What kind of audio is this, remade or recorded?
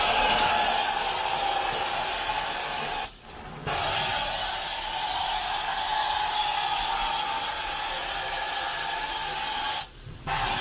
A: recorded